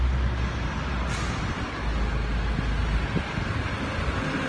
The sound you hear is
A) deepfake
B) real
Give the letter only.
B